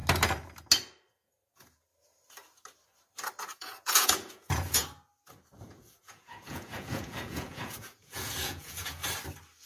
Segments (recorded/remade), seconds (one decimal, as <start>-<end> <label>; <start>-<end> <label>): 0.0-1.1 recorded; 1.1-1.9 remade; 1.9-3.4 recorded; 3.4-4.8 remade; 4.8-5.6 recorded; 5.6-9.0 remade; 9.0-9.7 recorded